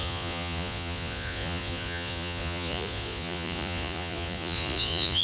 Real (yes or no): no